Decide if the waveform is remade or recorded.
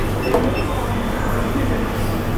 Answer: recorded